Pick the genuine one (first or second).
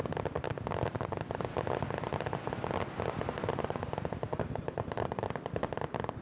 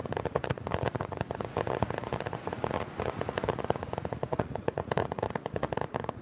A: first